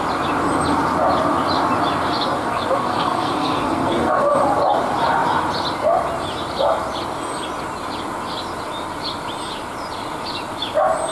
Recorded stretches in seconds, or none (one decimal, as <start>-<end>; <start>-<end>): 0.0-2.4; 4.3-11.1